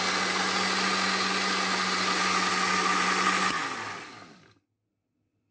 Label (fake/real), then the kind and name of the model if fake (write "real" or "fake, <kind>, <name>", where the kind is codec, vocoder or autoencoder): real